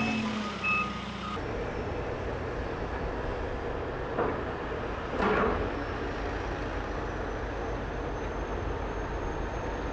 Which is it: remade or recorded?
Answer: recorded